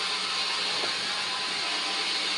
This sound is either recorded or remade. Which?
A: recorded